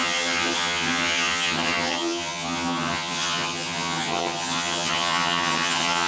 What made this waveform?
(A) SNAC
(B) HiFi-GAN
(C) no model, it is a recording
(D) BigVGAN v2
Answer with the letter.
B